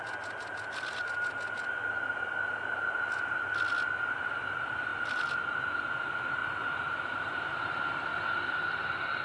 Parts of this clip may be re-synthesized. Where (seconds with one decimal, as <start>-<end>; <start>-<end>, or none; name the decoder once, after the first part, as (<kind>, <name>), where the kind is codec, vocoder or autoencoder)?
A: 0.0-1.3 (vocoder, BigVGAN v2); 4.9-5.4; 6.4-7.6